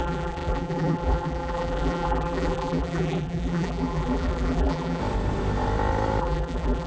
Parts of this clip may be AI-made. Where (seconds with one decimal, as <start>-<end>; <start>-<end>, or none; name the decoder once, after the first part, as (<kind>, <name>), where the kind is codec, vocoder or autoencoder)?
0.0-5.0 (vocoder, BigVGAN v2); 6.2-6.9